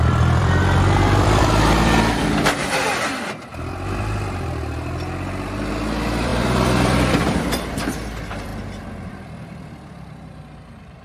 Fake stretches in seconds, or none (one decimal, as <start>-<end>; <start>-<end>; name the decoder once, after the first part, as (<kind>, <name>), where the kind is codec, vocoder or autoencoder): 0.0-2.6 (vocoder, BigVGAN v2); 5.7-8.5; 9.1-11.0